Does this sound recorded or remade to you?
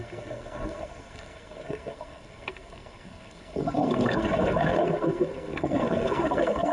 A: remade